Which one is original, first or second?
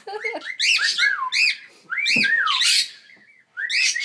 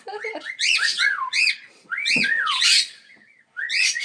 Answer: first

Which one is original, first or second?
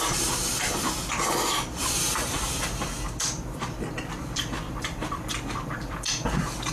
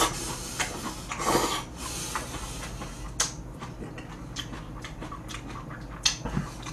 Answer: second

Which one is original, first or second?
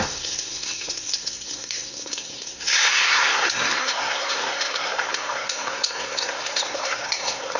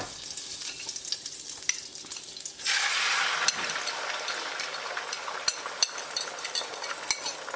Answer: second